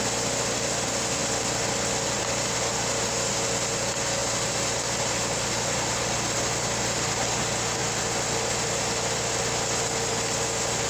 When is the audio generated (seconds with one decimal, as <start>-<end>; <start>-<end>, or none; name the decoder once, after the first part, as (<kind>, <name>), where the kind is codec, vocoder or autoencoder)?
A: none